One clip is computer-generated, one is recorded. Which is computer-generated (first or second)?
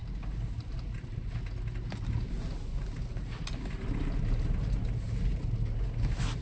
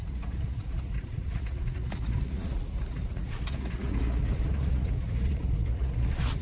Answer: second